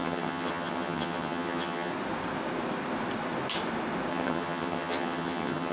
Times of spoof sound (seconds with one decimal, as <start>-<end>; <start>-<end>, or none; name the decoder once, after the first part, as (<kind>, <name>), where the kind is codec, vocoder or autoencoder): 0.0-1.9 (vocoder, HiFi-GAN); 4.1-5.7